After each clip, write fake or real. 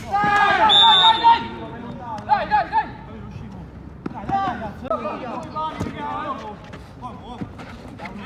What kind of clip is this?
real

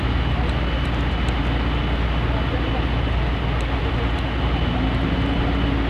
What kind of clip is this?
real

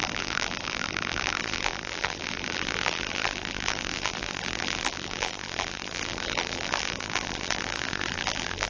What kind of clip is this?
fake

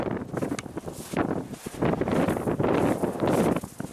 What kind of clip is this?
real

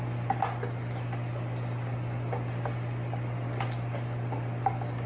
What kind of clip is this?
real